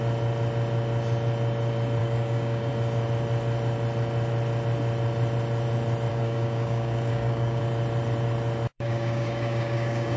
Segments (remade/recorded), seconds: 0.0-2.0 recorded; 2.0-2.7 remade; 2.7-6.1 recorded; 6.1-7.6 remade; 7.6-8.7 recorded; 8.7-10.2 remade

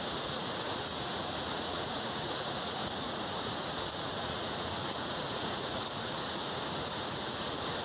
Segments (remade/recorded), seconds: 0.0-7.8 remade

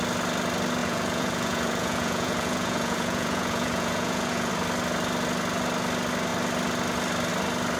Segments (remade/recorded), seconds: 0.0-0.8 recorded; 0.8-4.5 remade; 4.5-7.8 recorded

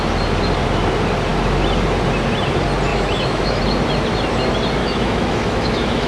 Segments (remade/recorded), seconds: 0.0-2.9 recorded; 2.9-3.6 remade; 3.6-4.8 recorded; 4.8-6.1 remade